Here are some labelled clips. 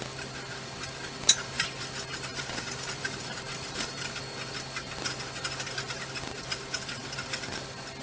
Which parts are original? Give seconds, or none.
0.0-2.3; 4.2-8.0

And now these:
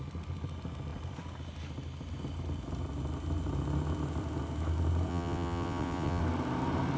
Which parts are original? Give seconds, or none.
0.0-5.1; 6.2-7.0

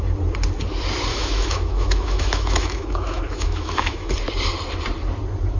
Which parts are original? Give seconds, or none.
0.0-1.1; 4.1-5.6

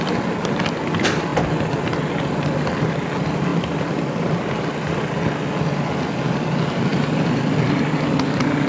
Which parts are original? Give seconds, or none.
0.0-3.5; 4.4-6.9; 7.5-8.7

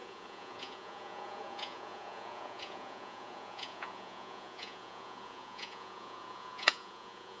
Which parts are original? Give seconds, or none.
none

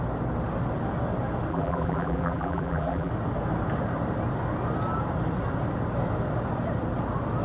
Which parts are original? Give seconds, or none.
0.0-1.5; 3.1-7.4